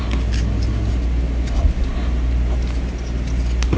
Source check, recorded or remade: recorded